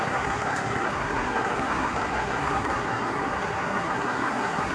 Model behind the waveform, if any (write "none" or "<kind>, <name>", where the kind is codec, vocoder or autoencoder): codec, SNAC